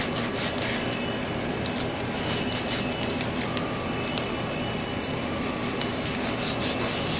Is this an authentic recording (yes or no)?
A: yes